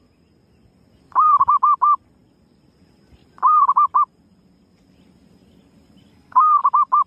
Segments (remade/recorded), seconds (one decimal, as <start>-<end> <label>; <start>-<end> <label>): 0.0-6.1 recorded; 6.1-6.6 remade; 6.6-7.1 recorded